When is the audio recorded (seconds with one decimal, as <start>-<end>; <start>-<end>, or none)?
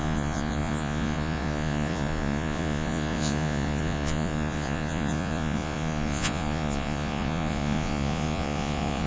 none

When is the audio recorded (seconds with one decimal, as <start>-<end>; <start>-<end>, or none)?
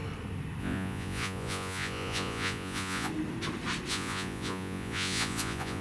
0.0-0.6; 3.1-3.9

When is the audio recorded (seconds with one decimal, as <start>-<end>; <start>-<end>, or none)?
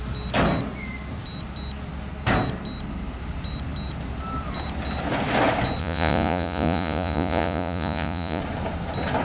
0.0-5.8; 8.4-9.2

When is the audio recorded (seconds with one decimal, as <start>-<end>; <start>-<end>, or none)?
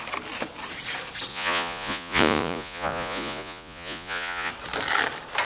0.0-1.3; 4.5-5.4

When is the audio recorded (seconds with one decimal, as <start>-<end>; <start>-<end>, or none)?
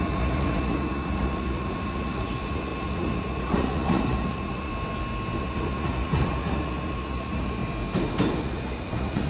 4.7-5.4; 7.6-8.4